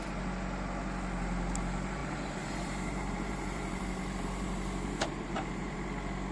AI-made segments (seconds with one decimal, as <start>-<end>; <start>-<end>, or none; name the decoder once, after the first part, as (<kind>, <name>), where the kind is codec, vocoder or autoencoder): 2.0-5.8 (vocoder, BigVGAN v2)

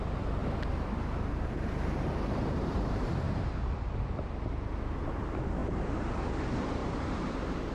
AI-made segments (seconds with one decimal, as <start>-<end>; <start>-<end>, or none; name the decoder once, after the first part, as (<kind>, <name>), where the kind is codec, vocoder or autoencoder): 0.4-3.5 (vocoder, BigVGAN v2); 5.6-6.1; 6.8-7.7

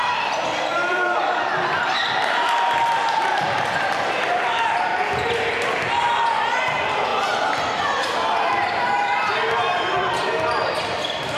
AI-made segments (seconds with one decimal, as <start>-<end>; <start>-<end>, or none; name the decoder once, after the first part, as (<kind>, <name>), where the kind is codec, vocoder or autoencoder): 0.0-4.9 (vocoder, BigVGAN v2); 6.6-11.4

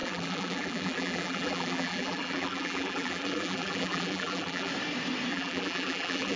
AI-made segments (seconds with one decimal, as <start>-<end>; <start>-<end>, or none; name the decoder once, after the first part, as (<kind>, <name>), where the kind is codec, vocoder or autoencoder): 0.0-4.7 (vocoder, BigVGAN v2); 5.3-6.4